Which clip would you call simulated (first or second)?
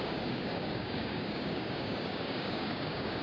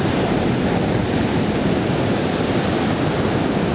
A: first